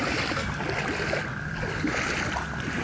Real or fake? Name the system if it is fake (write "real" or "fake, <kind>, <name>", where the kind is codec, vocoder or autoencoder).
real